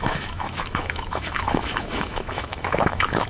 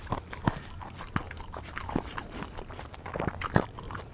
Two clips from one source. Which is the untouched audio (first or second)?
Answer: second